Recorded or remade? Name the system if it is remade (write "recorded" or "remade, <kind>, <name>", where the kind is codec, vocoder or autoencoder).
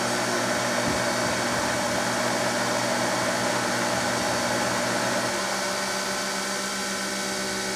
recorded